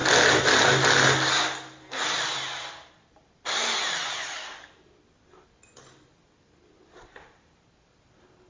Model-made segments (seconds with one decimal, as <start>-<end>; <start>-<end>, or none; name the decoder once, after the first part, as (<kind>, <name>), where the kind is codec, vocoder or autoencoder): none